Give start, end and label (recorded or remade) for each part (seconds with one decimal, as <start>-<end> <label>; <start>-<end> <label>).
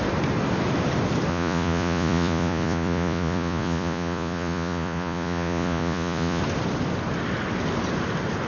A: 0.0-1.3 recorded; 1.3-6.4 remade; 6.4-8.5 recorded